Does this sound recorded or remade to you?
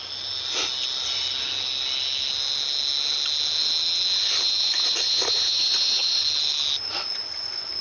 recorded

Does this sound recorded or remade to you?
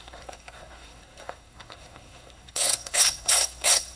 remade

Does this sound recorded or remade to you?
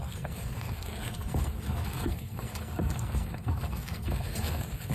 remade